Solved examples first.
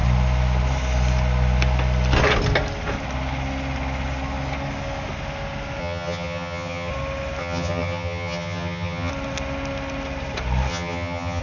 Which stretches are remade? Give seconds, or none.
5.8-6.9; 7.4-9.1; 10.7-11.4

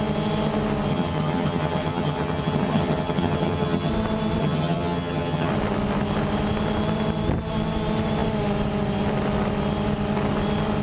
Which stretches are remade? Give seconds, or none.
0.9-3.9; 4.4-5.5

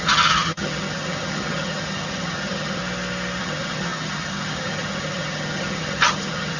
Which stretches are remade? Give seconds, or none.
0.0-2.8; 3.4-6.6

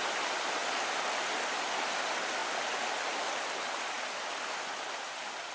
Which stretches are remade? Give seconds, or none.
none

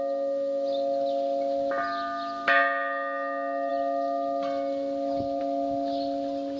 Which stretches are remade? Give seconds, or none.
none

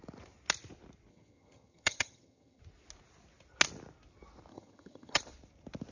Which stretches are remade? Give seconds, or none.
1.1-2.6; 4.5-5.2